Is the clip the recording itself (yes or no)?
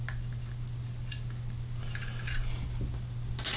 yes